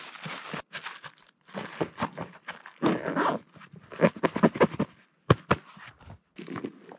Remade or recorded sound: recorded